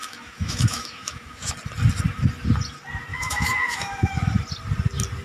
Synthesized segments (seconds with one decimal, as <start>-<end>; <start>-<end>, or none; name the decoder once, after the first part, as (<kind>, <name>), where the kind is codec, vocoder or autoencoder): 0.0-1.5 (autoencoder, DAC-VAE); 3.1-4.2